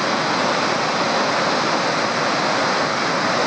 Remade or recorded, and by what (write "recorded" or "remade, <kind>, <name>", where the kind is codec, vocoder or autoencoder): recorded